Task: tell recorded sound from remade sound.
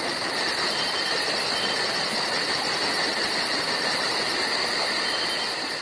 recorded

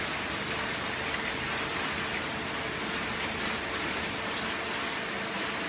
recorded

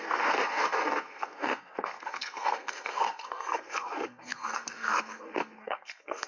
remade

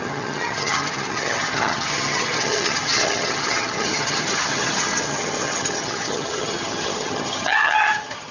remade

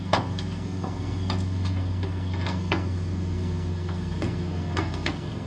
remade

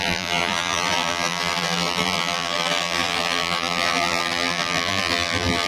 remade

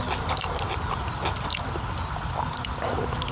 recorded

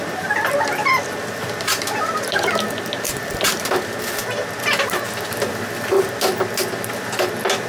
recorded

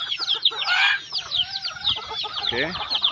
recorded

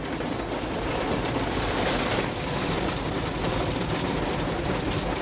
recorded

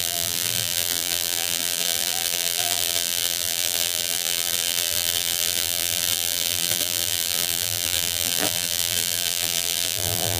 remade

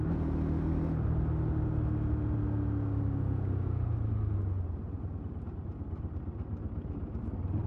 recorded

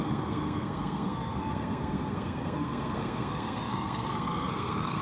remade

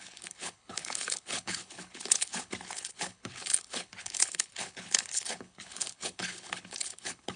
remade